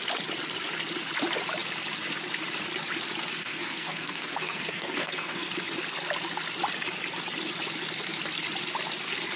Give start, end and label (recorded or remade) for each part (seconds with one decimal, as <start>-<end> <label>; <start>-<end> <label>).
0.0-3.4 recorded; 3.4-5.5 remade; 5.5-9.4 recorded

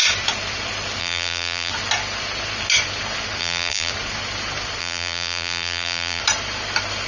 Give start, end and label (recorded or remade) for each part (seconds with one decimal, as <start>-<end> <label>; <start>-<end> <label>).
0.0-1.0 recorded; 1.0-1.7 remade; 1.7-3.4 recorded; 3.4-3.9 remade; 3.9-4.8 recorded; 4.8-6.2 remade; 6.2-7.1 recorded

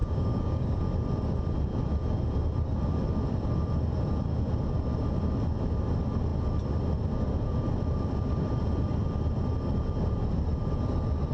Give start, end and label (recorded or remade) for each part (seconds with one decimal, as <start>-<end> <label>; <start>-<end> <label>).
0.0-0.8 remade; 0.8-11.3 recorded